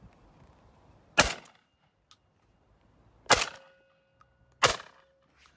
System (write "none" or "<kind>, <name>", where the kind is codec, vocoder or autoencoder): none